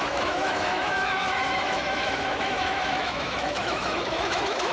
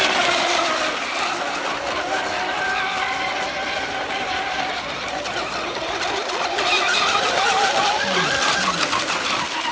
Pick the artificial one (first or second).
first